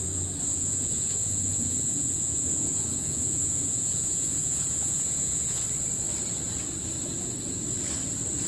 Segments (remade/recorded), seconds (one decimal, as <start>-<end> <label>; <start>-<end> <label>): 0.0-0.5 recorded; 0.5-5.6 remade; 5.6-8.5 recorded